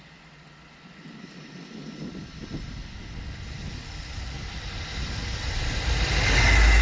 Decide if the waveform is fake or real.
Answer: real